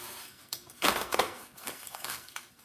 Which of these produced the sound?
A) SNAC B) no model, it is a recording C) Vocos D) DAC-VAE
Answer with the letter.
A